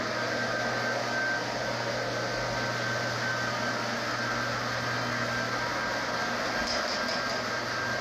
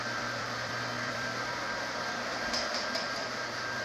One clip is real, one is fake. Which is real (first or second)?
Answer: first